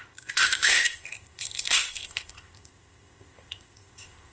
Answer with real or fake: fake